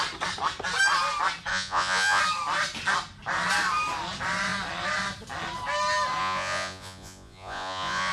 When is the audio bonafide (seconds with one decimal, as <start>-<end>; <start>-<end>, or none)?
0.0-1.5; 2.2-6.2